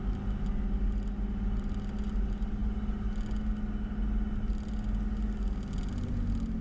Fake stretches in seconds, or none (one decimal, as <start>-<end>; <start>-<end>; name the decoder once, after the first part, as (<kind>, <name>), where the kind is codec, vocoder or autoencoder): none